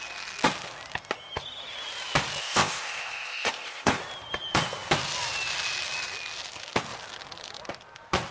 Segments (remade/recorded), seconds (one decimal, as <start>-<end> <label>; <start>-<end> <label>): 0.0-2.4 recorded; 2.4-4.0 remade; 4.0-8.3 recorded